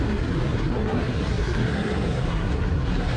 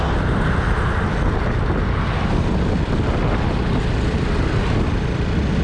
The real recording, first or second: second